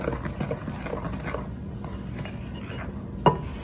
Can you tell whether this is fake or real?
real